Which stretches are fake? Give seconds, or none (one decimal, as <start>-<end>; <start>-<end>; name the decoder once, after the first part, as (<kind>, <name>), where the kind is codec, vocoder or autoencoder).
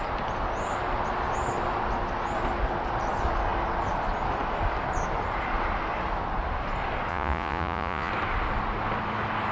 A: 7.1-8.1 (vocoder, Vocos)